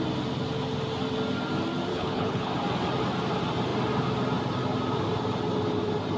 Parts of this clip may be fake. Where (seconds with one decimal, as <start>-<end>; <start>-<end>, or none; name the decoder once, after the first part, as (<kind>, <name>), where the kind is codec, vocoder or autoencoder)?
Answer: 1.9-2.5 (codec, HILCodec)